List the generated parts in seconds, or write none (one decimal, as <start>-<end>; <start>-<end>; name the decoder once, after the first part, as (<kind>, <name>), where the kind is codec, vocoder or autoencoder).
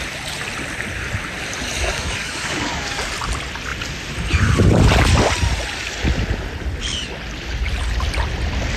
1.9-3.1 (codec, DAC)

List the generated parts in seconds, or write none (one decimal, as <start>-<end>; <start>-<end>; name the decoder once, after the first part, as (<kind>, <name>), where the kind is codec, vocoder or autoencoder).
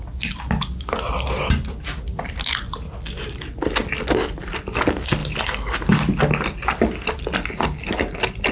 none